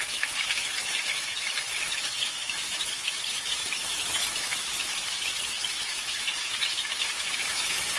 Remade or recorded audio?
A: remade